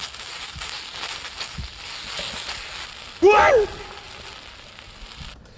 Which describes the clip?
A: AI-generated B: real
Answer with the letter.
B